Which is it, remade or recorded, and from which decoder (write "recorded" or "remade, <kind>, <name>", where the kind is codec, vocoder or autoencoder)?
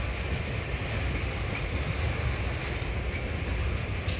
recorded